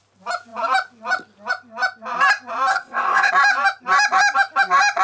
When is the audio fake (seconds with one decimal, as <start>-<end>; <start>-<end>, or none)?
2.7-3.3